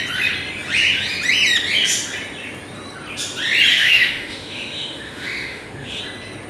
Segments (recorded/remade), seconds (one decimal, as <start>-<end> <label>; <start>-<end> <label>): 0.0-3.7 recorded; 3.7-6.0 remade; 6.0-6.5 recorded